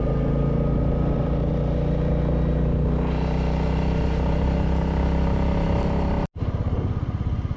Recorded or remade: recorded